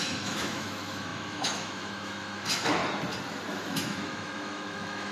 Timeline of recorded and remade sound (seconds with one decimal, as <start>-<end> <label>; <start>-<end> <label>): 0.0-2.8 remade; 2.8-3.5 recorded; 3.5-5.1 remade